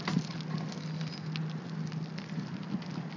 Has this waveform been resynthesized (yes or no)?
no